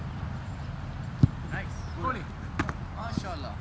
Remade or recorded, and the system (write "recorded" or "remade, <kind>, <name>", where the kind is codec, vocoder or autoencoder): recorded